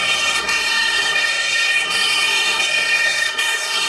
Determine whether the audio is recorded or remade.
remade